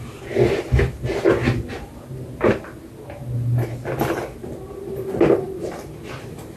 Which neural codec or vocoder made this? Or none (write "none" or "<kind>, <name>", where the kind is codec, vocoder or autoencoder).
none